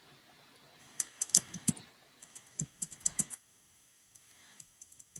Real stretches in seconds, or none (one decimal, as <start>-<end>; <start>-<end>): 0.0-0.8; 1.7-2.2